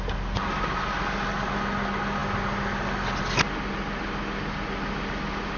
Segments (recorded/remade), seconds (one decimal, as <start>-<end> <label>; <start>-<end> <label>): 0.0-5.6 recorded